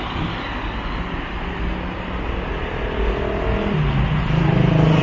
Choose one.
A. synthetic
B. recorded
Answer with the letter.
B